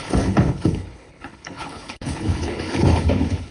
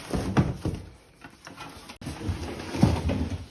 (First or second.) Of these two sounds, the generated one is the first